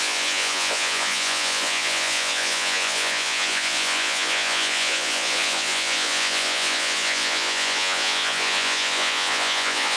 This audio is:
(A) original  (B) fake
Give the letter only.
B